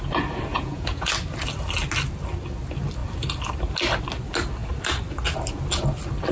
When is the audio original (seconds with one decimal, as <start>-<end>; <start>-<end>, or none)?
0.0-0.5; 1.1-6.3